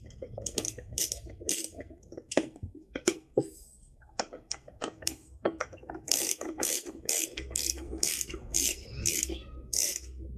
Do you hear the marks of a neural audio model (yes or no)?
yes